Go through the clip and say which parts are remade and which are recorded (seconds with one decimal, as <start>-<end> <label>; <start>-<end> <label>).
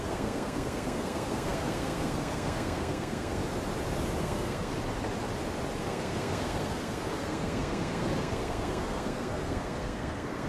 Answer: 0.0-3.4 remade; 3.4-4.2 recorded; 4.2-4.7 remade; 4.7-5.8 recorded; 5.8-10.5 remade